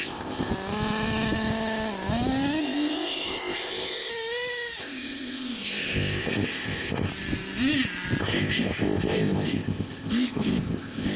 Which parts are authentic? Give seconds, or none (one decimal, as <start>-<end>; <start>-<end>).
0.5-2.6; 4.1-4.8; 7.1-8.2